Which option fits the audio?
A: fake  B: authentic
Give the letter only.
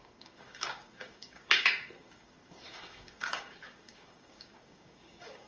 A